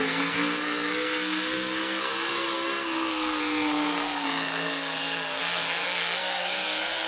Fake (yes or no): yes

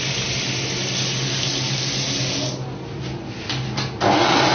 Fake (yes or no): no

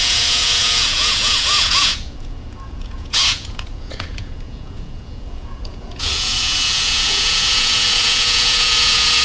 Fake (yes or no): yes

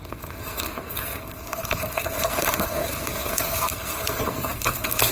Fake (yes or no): yes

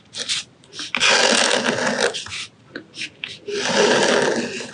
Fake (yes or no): no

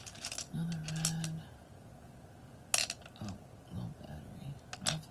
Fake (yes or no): no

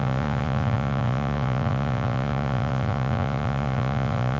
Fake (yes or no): yes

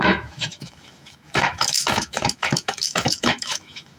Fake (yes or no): yes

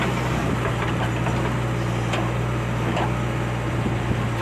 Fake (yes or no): no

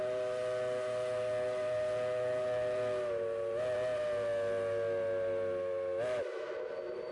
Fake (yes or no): no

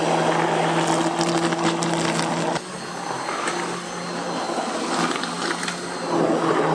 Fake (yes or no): no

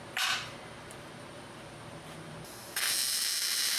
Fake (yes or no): yes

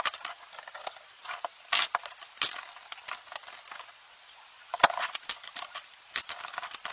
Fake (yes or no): no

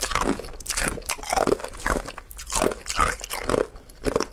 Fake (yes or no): no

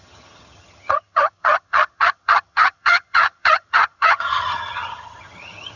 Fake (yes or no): yes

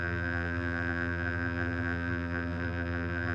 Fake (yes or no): yes